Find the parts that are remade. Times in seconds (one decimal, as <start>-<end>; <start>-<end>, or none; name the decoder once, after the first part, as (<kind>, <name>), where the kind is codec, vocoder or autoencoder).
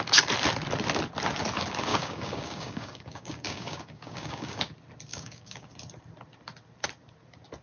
1.9-4.6 (codec, DAC); 5.1-5.7